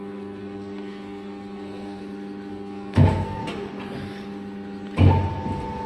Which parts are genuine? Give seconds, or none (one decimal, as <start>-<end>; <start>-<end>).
2.0-2.5; 3.4-5.9